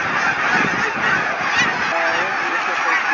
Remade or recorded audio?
recorded